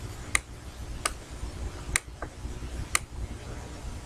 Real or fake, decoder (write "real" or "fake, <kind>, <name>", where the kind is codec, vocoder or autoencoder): real